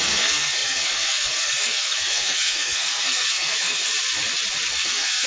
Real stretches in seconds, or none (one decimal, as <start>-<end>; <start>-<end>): 3.9-4.7